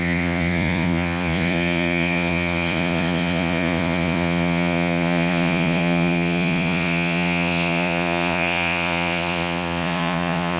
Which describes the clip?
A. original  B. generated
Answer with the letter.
B